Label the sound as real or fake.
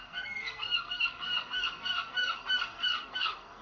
fake